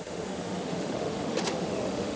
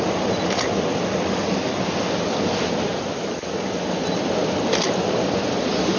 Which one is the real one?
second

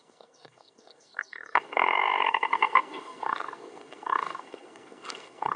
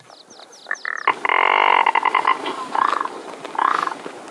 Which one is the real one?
second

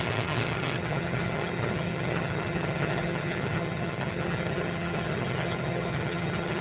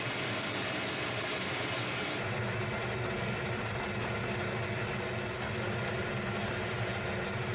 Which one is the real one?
second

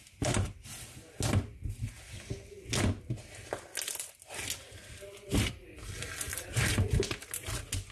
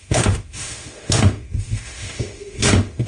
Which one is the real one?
first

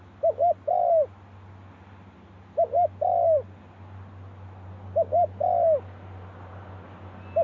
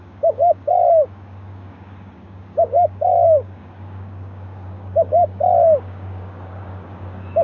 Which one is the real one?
first